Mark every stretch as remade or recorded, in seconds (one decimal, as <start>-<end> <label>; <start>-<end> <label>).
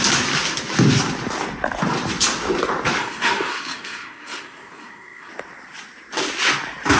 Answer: 0.0-3.0 recorded; 3.0-5.3 remade; 5.3-7.0 recorded